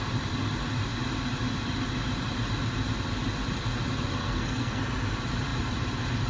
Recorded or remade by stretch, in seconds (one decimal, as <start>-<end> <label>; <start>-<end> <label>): 0.0-4.2 recorded; 4.2-4.8 remade; 4.8-6.3 recorded